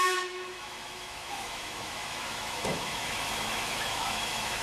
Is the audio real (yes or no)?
no